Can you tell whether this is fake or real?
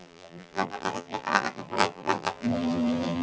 fake